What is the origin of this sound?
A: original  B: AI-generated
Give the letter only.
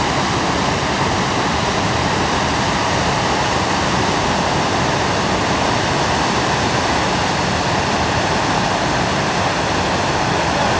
A